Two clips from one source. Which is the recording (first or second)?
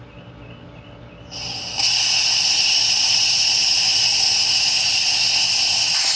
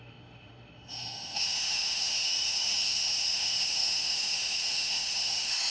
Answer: first